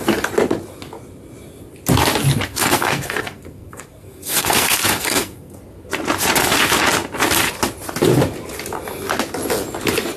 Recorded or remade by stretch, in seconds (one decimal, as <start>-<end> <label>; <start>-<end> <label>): 0.0-2.5 recorded; 2.5-5.6 remade; 5.6-10.2 recorded